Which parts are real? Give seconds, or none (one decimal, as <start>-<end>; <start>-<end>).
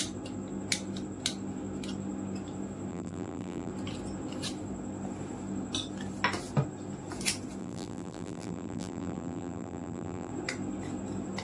0.0-2.9; 3.7-7.6; 10.3-11.4